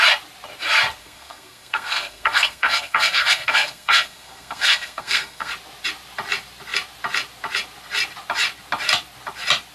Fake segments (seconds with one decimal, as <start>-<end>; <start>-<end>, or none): 1.0-5.5